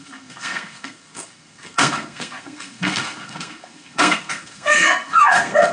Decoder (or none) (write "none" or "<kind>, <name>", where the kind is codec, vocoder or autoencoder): codec, SNAC